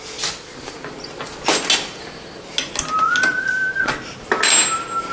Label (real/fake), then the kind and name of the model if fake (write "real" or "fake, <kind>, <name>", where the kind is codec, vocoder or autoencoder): real